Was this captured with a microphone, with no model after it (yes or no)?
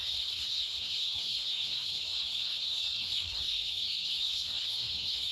no